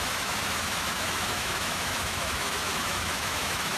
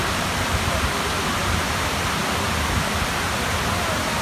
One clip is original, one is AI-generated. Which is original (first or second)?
second